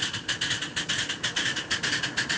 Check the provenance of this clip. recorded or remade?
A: recorded